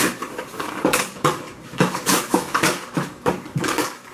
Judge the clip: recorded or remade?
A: remade